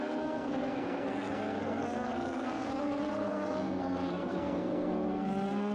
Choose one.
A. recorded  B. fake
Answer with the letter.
B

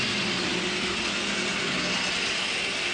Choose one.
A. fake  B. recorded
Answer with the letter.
B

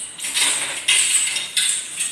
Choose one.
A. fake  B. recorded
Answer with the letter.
B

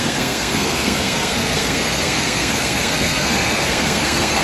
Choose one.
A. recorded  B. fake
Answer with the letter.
B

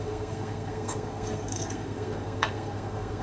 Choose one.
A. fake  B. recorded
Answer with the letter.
A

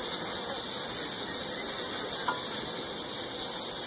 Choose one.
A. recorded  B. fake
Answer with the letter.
A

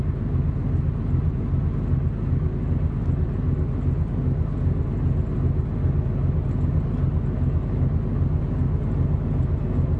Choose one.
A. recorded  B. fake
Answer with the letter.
A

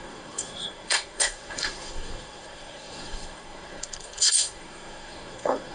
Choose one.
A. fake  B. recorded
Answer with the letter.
A